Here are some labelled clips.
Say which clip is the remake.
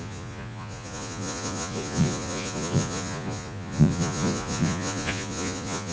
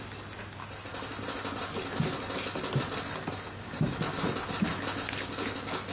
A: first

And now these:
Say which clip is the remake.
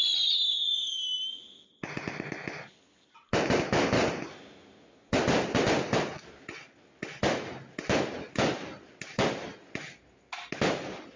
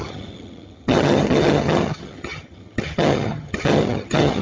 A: second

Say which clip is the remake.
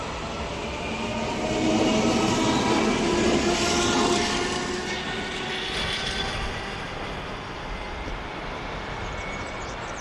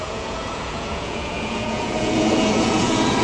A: second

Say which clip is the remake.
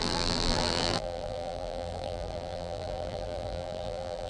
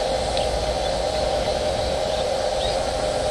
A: first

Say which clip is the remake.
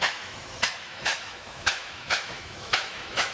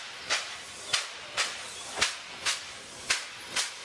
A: first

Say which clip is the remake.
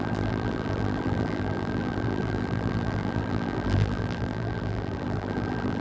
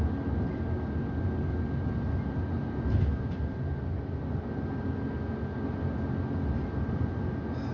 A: first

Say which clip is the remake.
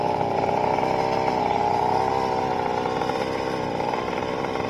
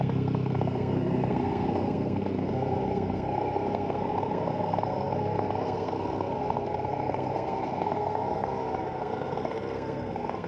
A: second